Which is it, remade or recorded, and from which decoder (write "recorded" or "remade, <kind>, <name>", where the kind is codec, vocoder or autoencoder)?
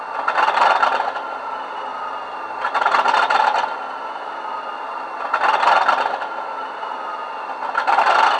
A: recorded